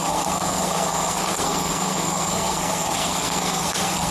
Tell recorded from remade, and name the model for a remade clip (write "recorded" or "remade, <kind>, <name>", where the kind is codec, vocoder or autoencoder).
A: remade, codec, SNAC